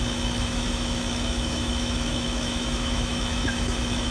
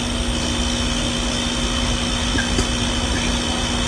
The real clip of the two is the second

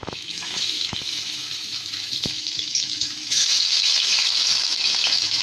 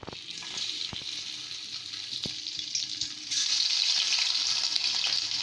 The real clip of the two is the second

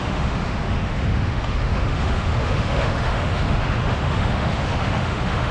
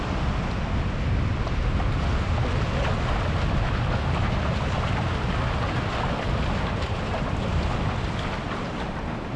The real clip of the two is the second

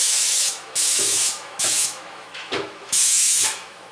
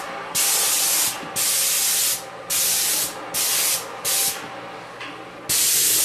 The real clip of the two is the second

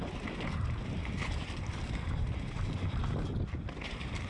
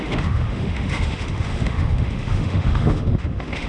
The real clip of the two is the first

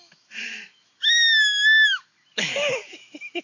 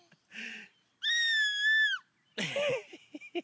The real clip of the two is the second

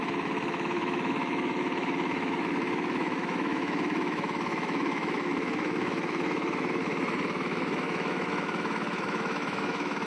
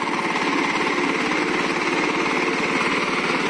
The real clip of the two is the second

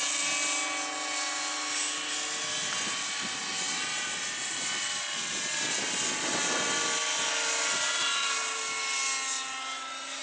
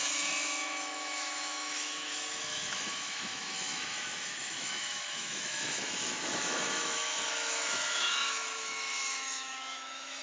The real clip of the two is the first